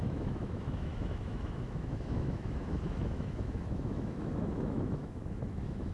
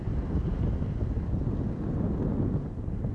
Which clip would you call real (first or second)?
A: second